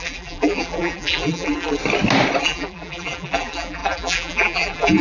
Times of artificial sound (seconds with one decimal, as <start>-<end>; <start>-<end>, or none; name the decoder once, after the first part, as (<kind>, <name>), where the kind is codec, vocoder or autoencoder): 0.0-1.8 (vocoder, BigVGAN v2); 2.4-5.0